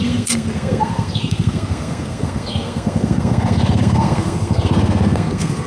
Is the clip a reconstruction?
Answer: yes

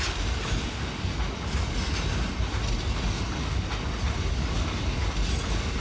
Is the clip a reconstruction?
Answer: no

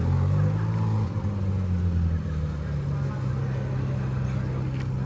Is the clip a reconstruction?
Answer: no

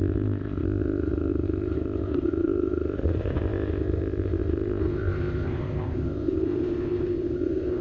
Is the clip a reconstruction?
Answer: yes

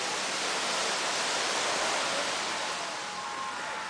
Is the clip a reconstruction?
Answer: no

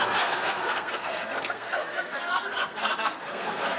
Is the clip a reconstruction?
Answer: yes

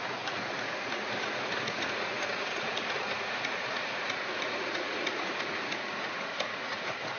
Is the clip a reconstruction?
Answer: yes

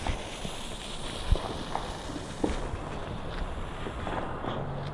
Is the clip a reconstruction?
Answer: no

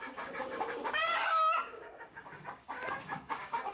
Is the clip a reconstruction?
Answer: yes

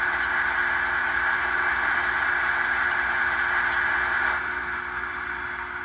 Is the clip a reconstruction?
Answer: no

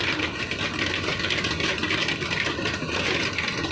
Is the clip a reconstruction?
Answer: no